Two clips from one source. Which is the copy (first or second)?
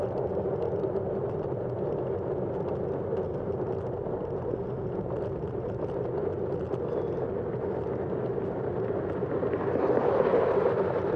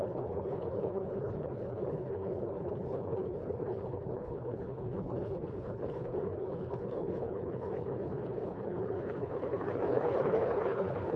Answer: second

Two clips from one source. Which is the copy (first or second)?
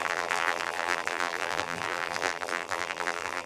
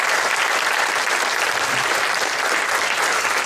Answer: first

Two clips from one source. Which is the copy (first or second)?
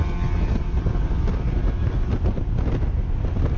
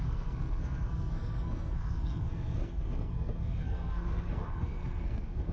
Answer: second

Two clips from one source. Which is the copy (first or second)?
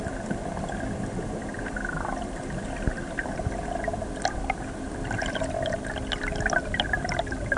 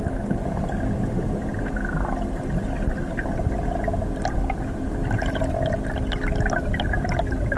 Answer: first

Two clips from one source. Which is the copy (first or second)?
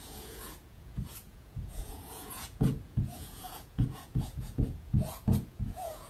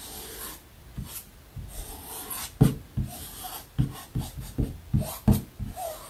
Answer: first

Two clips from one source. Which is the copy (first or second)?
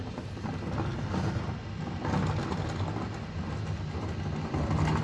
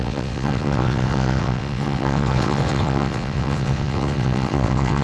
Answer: second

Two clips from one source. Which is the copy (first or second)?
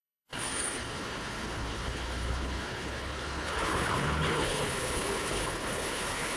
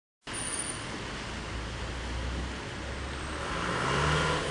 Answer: first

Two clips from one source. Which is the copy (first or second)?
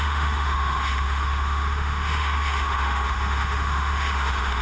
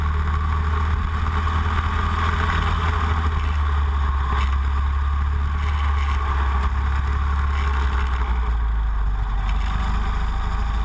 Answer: first